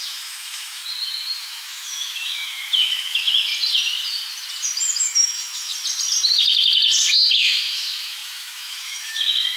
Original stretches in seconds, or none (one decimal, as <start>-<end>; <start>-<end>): 0.8-1.4; 3.5-5.0; 5.7-7.3